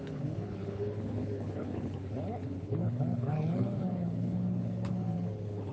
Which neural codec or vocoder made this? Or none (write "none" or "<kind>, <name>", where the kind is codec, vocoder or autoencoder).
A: codec, HILCodec